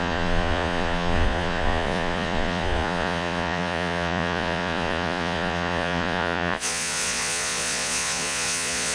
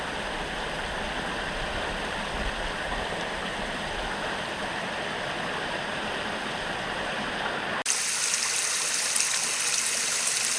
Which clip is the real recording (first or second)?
second